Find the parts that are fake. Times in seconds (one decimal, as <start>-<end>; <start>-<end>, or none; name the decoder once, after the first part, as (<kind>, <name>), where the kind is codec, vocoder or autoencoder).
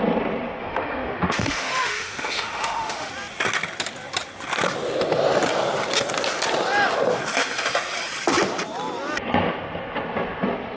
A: 0.6-3.1 (autoencoder, DAC-VAE)